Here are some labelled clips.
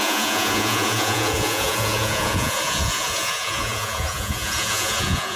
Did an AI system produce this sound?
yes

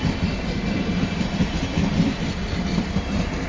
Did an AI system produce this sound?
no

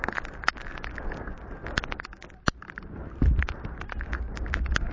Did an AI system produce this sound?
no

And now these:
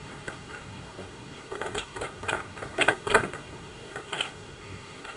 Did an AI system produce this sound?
yes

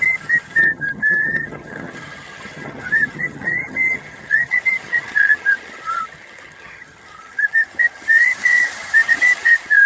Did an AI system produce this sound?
yes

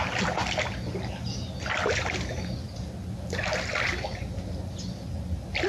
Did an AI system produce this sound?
no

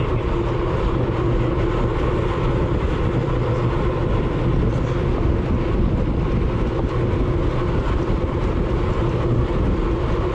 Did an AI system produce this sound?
no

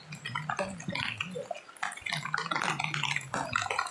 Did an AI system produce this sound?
no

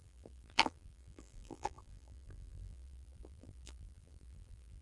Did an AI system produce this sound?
yes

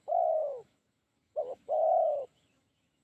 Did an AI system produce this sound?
yes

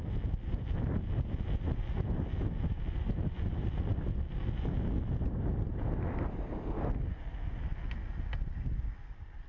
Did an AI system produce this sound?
no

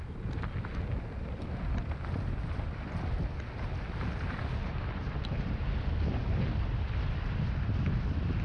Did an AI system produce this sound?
no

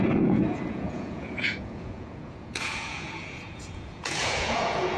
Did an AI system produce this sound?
yes